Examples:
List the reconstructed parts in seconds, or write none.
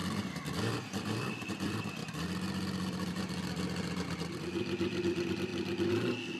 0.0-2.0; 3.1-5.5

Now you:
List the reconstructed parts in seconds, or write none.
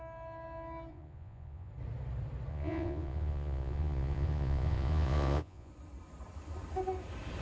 0.9-1.7; 2.5-5.7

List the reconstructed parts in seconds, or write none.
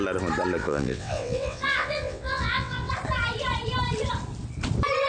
0.6-2.9